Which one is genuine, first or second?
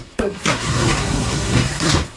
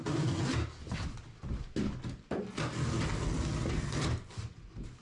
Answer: second